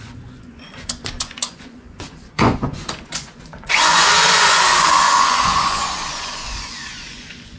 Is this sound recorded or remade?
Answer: remade